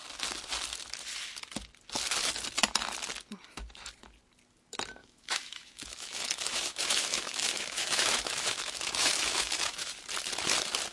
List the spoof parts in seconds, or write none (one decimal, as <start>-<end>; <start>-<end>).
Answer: 5.0-9.9